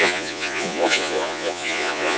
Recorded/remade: remade